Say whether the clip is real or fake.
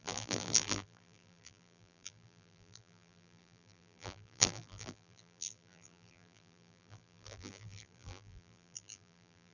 fake